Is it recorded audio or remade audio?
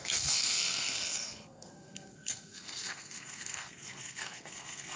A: remade